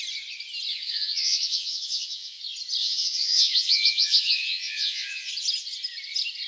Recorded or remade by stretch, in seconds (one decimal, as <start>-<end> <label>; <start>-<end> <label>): 0.0-0.7 recorded; 0.7-2.4 remade; 2.4-2.8 recorded; 2.8-5.3 remade; 5.3-6.5 recorded

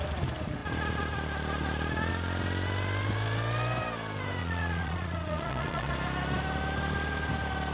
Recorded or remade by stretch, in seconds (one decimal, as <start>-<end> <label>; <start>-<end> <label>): 0.0-4.4 recorded; 4.4-5.9 remade; 5.9-7.7 recorded

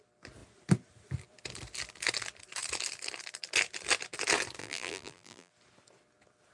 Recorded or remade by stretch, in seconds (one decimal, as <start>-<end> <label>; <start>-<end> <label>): 0.0-4.6 recorded; 4.6-5.5 remade; 5.5-6.5 recorded

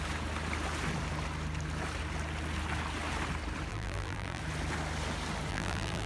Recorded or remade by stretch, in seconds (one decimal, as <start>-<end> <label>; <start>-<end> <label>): 0.0-3.7 recorded; 3.7-4.4 remade; 4.4-5.5 recorded; 5.5-6.1 remade

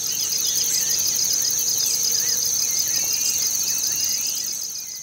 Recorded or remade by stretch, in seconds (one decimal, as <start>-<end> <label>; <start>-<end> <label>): 0.0-1.6 recorded; 1.6-3.7 remade; 3.7-5.0 recorded

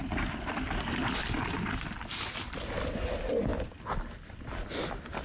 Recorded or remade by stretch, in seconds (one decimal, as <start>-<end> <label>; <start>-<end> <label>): 0.0-5.2 recorded

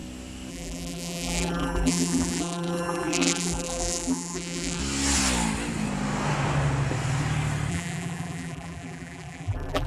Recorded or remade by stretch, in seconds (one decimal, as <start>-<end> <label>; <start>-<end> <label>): 0.0-0.5 recorded; 0.5-4.8 remade; 4.8-7.7 recorded; 7.7-9.9 remade

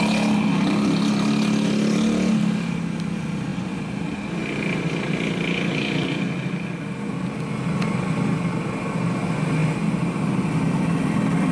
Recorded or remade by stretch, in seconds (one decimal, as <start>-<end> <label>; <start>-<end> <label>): 0.0-11.5 recorded